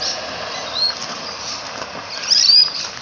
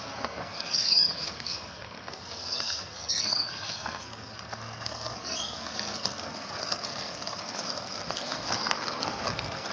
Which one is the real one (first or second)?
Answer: first